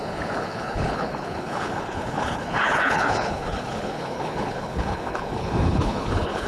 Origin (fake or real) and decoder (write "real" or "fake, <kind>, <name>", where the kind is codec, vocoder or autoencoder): fake, codec, HILCodec